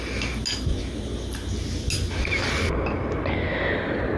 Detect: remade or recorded recorded